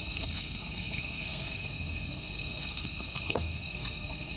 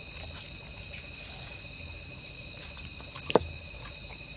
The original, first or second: second